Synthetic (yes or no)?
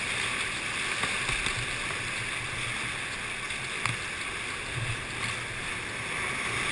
no